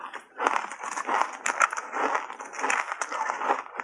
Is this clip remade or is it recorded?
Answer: recorded